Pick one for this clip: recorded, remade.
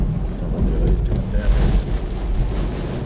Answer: recorded